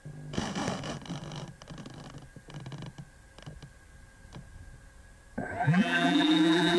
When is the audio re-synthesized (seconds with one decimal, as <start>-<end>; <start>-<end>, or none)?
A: 5.6-6.8